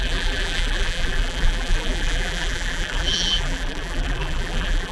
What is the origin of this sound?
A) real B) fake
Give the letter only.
B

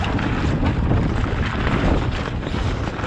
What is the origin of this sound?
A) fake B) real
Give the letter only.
B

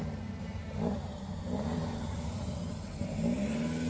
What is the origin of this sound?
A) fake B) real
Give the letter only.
B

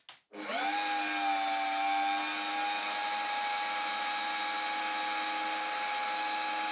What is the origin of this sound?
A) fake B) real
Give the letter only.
B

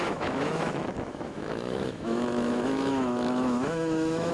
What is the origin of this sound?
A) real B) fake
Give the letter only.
B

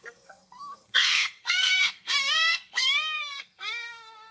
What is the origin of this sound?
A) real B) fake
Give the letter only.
B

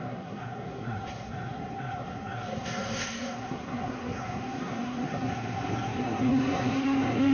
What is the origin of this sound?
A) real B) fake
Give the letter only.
B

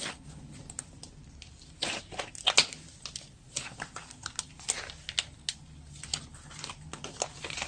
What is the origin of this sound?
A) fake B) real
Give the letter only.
B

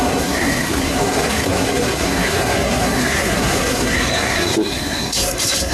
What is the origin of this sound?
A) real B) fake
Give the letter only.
B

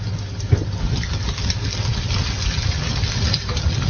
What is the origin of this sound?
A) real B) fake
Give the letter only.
A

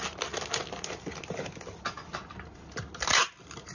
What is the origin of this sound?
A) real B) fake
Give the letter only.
A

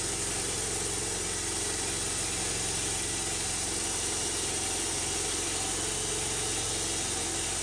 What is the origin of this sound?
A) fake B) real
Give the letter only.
B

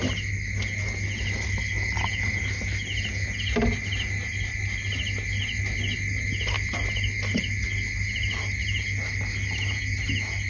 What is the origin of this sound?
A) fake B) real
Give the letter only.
B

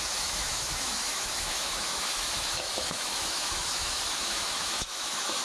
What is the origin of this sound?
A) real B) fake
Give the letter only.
B